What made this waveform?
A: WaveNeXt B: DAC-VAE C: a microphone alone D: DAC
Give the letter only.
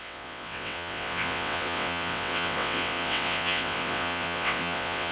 A